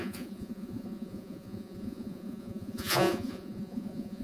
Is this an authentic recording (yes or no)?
no